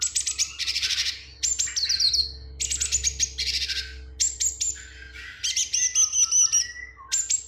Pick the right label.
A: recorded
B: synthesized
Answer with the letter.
A